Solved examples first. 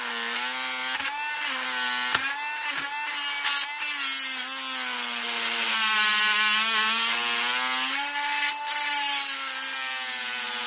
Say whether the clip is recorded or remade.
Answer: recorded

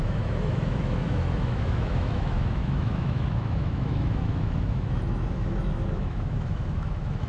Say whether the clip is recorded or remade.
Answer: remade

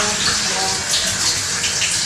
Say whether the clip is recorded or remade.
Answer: recorded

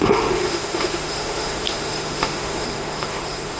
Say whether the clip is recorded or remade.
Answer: remade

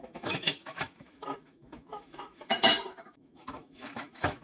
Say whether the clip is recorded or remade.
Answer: remade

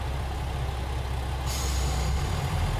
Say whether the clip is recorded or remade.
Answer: recorded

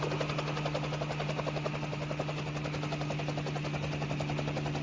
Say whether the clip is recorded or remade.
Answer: recorded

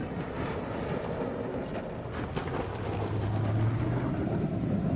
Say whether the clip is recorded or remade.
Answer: recorded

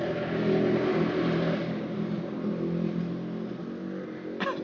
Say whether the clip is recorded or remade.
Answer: recorded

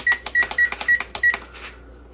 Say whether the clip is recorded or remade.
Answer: recorded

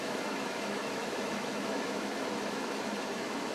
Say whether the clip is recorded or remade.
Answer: remade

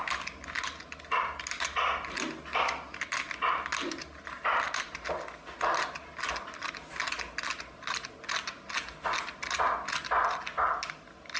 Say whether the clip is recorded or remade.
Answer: recorded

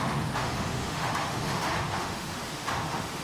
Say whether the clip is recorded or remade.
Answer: remade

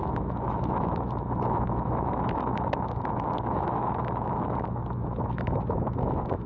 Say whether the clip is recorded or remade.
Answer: remade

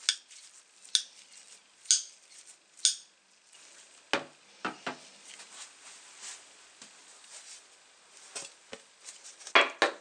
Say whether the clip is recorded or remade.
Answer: recorded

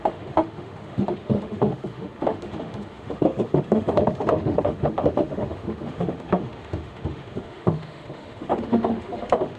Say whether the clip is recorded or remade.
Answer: remade